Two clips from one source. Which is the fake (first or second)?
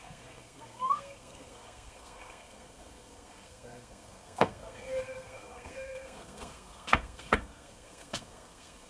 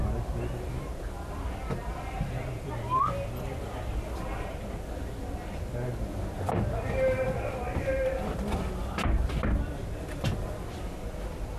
first